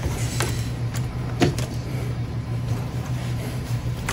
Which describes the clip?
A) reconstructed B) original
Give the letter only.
A